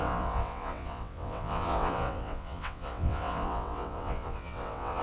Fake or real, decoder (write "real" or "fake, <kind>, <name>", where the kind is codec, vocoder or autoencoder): fake, vocoder, WaveNeXt